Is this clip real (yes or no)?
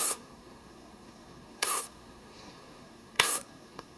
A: no